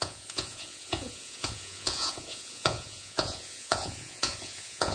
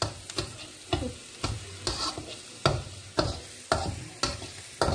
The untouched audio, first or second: second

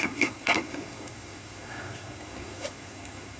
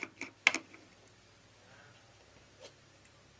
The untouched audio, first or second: second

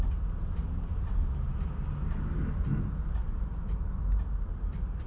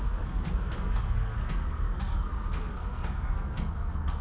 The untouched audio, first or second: first